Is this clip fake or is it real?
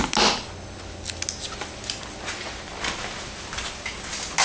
real